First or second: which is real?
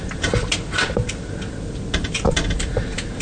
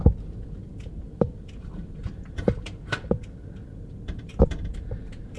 first